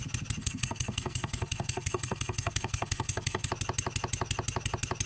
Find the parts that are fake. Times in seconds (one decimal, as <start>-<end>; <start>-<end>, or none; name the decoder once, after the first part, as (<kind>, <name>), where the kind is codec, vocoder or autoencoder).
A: 0.4-3.5 (codec, SNAC)